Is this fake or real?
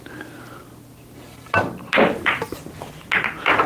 real